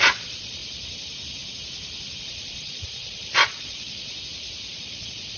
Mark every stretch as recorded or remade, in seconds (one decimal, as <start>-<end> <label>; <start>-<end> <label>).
0.0-0.6 remade; 0.6-2.2 recorded; 2.2-4.1 remade; 4.1-4.7 recorded; 4.7-5.4 remade